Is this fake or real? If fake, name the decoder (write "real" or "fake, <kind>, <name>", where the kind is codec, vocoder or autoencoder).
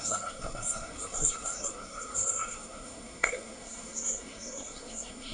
fake, codec, SNAC